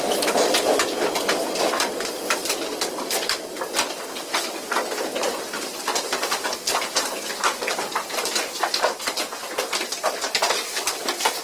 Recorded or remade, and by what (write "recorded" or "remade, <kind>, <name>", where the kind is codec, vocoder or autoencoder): recorded